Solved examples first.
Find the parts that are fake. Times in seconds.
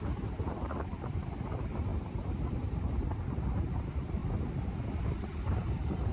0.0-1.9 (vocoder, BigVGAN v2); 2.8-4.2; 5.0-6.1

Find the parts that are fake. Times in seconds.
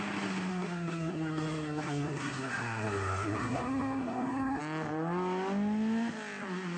0.5-4.6 (codec, SNAC)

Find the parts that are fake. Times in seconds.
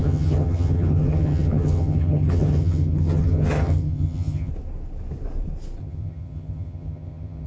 0.0-4.5 (vocoder, HiFi-GAN); 5.8-7.5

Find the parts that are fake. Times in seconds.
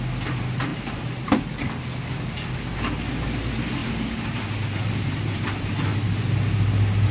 0.7-1.3 (vocoder, BigVGAN v2); 3.8-5.5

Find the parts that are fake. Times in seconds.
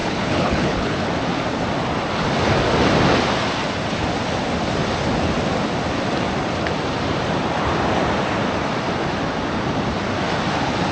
0.0-1.1 (codec, HILCodec)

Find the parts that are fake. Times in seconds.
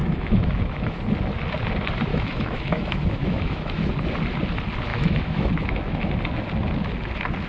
0.0-1.0 (autoencoder, DAC-VAE); 2.1-3.9; 4.9-6.1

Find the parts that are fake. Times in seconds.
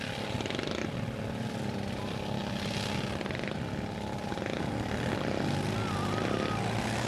none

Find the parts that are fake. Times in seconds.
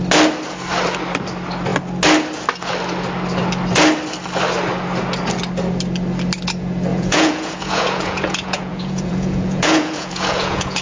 6.9-10.8 (vocoder, Vocos)